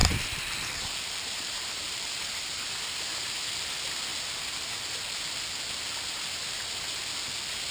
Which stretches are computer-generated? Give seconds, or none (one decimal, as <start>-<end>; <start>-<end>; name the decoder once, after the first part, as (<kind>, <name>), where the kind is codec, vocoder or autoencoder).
0.0-2.7 (vocoder, BigVGAN v2)